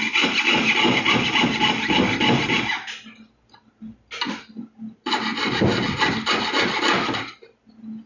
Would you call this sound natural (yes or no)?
yes